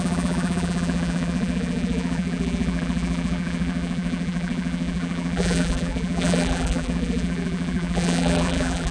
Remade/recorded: remade